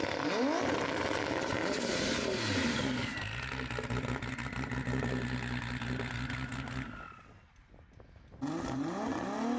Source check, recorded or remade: recorded